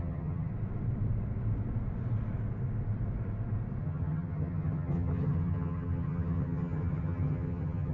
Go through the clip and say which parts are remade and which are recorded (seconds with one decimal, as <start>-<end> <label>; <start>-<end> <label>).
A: 0.0-0.5 remade; 0.5-3.8 recorded; 3.8-7.9 remade